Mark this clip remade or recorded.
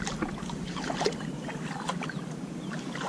recorded